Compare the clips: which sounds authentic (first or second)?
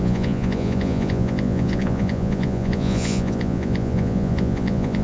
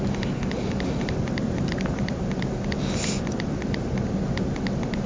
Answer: second